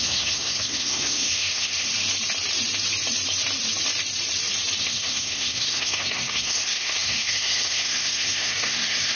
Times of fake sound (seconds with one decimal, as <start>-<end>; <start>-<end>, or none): 0.0-1.9; 4.8-9.2